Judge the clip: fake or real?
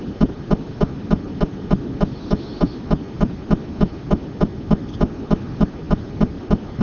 real